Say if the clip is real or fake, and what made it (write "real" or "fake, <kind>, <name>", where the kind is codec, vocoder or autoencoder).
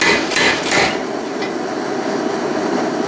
real